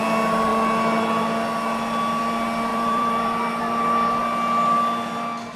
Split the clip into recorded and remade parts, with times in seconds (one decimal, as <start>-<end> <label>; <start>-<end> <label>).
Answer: 0.0-2.7 recorded; 2.7-3.6 remade; 3.6-5.6 recorded